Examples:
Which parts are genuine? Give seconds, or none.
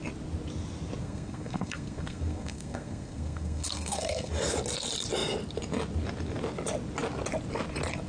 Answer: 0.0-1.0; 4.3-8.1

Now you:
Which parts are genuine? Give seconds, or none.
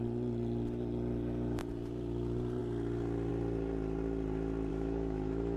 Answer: 0.0-4.7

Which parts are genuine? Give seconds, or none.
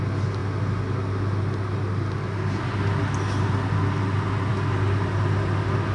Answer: 0.0-5.9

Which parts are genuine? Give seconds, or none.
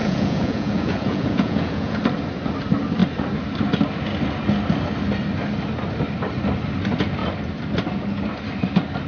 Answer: 2.0-9.1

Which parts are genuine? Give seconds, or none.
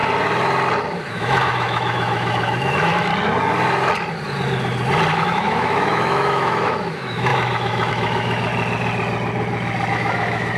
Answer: 0.0-1.1; 3.1-5.1; 8.5-9.9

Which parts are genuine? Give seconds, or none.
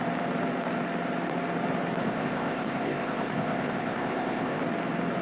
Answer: 0.0-2.0; 4.6-5.2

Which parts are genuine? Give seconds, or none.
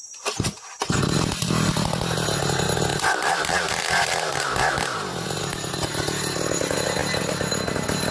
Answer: 1.7-2.9; 5.4-7.0; 7.5-8.1